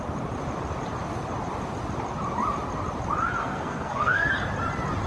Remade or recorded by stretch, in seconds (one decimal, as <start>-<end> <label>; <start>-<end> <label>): 0.0-3.4 recorded; 3.4-4.3 remade; 4.3-5.1 recorded